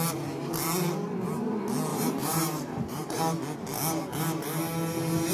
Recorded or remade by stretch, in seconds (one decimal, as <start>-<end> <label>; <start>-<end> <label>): 0.0-1.9 recorded; 1.9-3.2 remade; 3.2-5.3 recorded